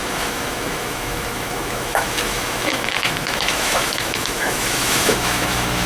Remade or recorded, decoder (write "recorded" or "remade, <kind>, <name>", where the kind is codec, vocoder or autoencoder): remade, autoencoder, DAC-VAE